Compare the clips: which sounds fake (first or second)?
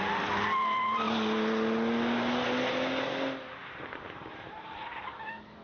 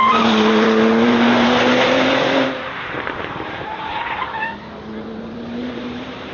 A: second